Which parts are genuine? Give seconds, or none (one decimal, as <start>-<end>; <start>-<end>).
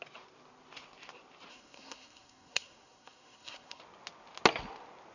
0.0-1.5; 3.8-5.1